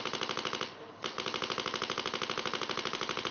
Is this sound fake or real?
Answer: real